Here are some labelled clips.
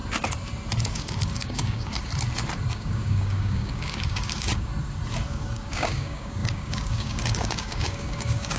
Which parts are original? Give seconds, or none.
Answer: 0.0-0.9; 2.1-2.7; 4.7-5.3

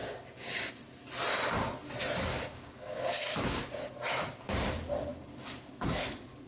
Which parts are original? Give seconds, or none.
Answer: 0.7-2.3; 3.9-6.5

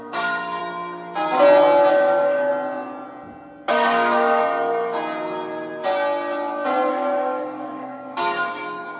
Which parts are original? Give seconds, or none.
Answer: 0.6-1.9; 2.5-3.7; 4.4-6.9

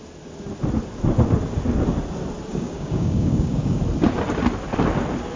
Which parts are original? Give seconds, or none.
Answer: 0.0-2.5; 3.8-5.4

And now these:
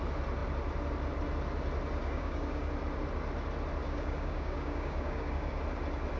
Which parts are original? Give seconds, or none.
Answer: 0.0-2.0; 2.7-3.8; 5.6-6.2

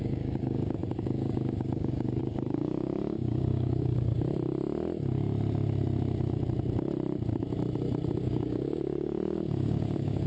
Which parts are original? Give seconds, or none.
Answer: 4.1-8.2

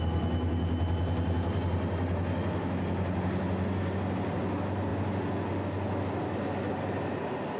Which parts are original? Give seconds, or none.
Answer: 0.0-7.6